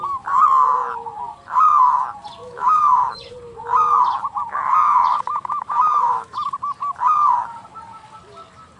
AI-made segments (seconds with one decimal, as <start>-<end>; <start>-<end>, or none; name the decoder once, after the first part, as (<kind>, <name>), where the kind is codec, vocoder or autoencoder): 2.4-3.1 (autoencoder, DAC-VAE); 5.1-6.5